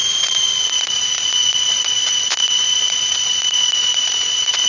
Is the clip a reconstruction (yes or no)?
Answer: yes